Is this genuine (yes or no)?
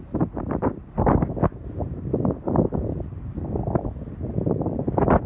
yes